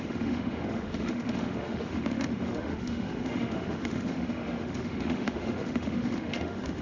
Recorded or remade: remade